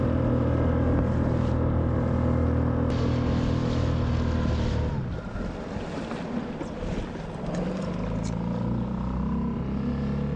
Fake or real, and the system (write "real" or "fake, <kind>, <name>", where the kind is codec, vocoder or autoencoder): real